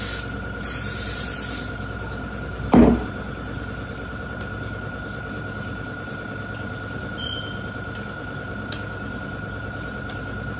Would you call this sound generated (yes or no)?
no